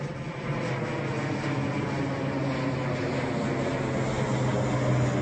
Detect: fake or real real